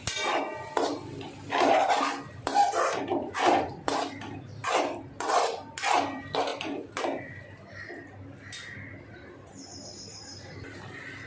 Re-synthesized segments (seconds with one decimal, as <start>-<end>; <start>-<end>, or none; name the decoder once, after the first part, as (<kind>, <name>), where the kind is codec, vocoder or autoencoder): 0.0-6.5 (vocoder, BigVGAN v2); 7.0-11.3